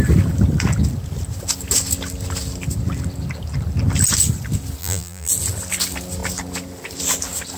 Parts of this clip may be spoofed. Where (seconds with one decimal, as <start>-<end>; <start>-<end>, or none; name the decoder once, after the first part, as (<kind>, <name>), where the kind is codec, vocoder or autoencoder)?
4.8-5.3 (vocoder, BigVGAN v2)